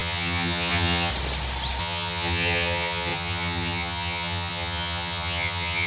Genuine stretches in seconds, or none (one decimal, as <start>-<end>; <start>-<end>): 1.1-1.8